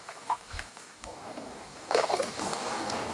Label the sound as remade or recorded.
remade